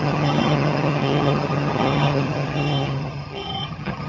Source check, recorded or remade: remade